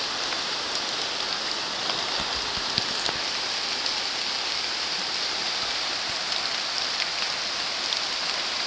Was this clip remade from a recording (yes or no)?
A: no